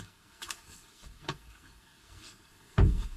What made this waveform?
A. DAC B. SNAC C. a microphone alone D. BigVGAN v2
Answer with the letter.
B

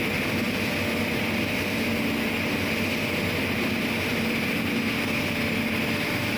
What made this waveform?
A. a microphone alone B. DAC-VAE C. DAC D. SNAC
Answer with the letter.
A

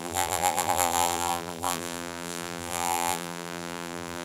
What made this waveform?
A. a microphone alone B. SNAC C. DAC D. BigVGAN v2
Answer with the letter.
D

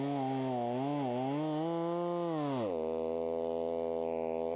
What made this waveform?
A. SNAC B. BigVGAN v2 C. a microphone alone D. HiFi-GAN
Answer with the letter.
C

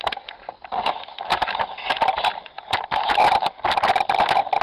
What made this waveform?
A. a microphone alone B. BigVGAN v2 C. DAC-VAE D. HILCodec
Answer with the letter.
A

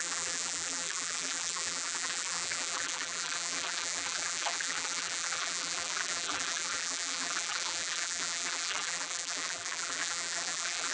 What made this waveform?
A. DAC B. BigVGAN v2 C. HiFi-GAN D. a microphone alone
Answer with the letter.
B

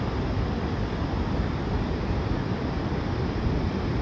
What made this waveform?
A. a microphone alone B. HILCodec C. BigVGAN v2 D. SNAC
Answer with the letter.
C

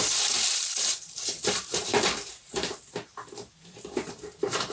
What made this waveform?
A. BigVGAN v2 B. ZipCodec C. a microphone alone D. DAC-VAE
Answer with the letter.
A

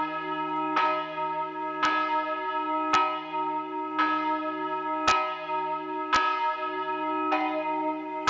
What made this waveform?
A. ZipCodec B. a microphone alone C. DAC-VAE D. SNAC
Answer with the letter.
B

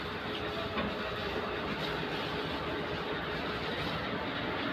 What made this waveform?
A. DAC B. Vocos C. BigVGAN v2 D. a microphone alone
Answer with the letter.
D